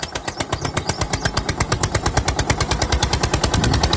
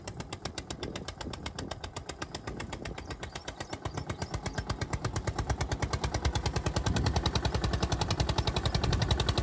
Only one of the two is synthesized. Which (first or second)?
second